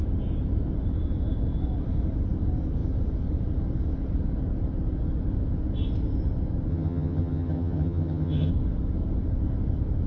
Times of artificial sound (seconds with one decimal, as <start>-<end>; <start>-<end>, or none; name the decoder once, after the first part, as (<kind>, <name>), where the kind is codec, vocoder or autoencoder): 6.7-8.5 (vocoder, HiFi-GAN)